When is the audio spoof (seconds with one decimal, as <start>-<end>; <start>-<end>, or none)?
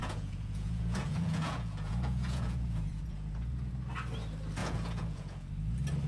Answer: 0.0-3.7; 4.6-5.5